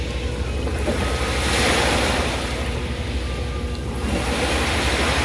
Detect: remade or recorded recorded